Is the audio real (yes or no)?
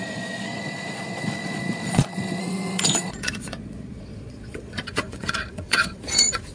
no